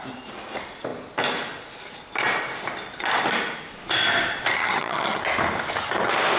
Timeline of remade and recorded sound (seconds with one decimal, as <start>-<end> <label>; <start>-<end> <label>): 0.0-4.6 recorded; 4.6-5.2 remade; 5.2-6.4 recorded